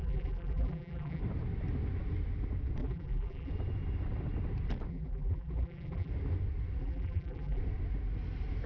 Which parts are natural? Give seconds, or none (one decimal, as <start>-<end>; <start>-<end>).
1.2-2.8; 3.5-4.9; 6.1-6.8; 7.6-8.7